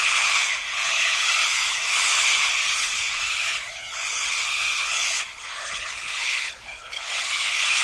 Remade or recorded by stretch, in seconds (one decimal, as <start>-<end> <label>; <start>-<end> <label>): 0.0-7.8 remade